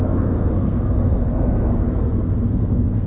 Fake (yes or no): yes